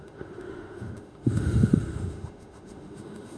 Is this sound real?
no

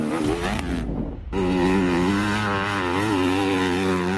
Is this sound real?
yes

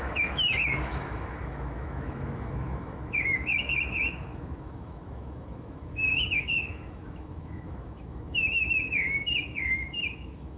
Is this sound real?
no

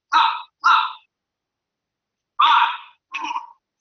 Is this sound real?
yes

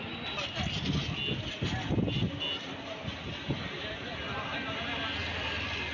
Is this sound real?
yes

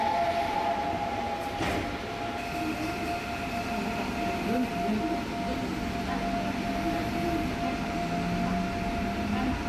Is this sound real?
yes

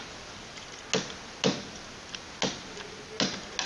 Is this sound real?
yes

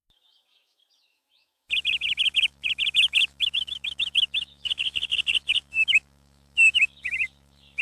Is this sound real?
no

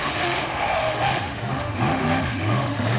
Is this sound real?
no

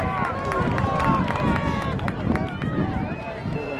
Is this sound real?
yes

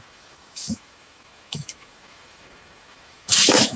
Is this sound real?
no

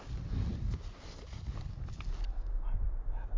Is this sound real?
yes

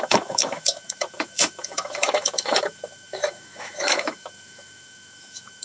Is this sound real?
no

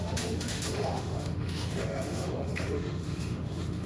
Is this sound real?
no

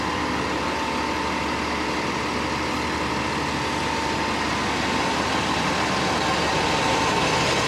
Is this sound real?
yes